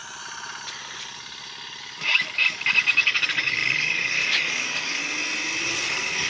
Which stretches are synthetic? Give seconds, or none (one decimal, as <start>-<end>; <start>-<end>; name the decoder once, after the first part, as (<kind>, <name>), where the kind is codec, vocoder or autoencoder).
1.8-5.0 (codec, DAC); 5.6-6.3